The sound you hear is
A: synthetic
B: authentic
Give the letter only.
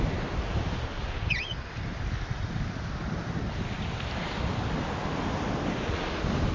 B